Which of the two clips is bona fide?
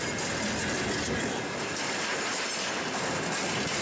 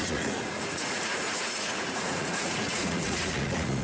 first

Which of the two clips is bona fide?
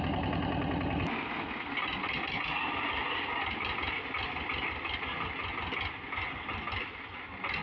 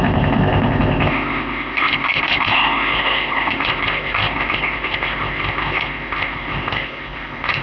first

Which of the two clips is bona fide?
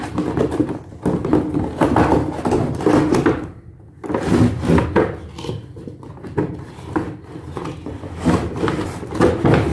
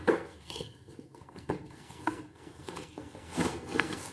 first